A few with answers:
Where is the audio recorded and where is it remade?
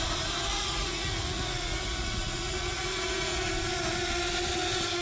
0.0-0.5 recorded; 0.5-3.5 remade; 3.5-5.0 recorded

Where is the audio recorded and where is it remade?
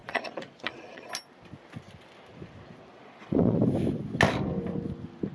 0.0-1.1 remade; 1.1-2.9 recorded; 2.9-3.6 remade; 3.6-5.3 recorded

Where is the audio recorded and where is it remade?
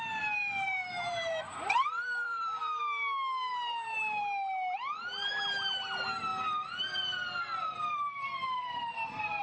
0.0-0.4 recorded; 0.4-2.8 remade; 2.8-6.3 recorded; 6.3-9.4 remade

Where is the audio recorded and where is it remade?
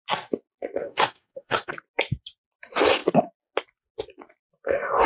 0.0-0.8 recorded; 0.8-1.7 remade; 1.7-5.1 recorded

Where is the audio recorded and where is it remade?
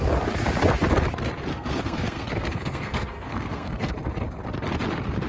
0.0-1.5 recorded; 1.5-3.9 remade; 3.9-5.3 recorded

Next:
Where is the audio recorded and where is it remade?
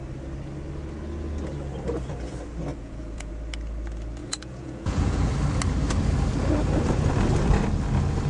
0.0-2.7 recorded; 2.7-3.3 remade; 3.3-4.2 recorded; 4.2-5.3 remade; 5.3-8.3 recorded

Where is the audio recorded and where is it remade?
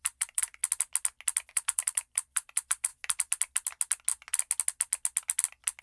0.0-0.6 remade; 0.6-1.5 recorded; 1.5-2.9 remade; 2.9-5.8 recorded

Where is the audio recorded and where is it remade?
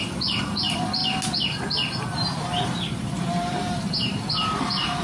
0.0-1.0 remade; 1.0-2.0 recorded; 2.0-5.0 remade